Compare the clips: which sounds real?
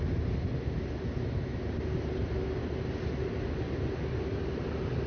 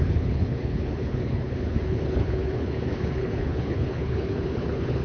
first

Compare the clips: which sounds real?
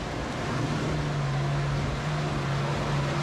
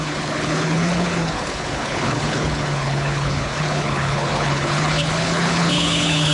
first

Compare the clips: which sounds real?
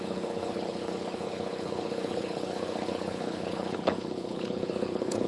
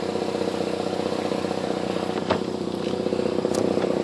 second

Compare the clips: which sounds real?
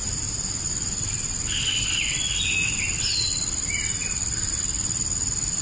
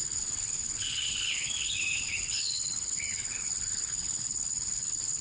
first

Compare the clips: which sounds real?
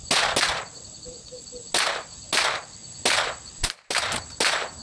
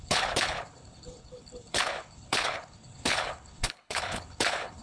first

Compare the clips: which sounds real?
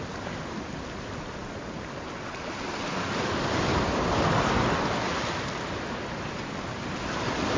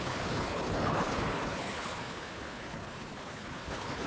first